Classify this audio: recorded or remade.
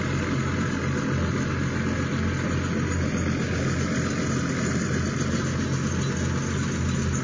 recorded